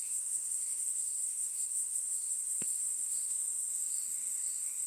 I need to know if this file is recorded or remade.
remade